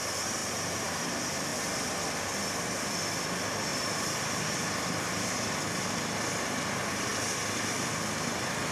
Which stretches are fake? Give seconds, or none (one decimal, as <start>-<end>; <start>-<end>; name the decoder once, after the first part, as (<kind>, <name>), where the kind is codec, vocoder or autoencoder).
0.4-1.0 (vocoder, BigVGAN v2); 3.7-5.6